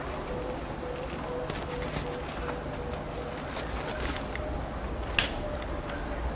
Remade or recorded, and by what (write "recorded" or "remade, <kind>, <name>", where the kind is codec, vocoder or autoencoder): recorded